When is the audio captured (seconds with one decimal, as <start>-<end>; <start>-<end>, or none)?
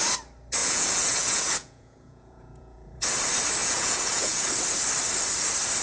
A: 0.0-0.6; 3.0-3.6; 4.5-5.8